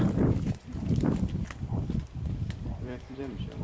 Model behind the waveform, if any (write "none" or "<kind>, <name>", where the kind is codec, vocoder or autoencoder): vocoder, BigVGAN v2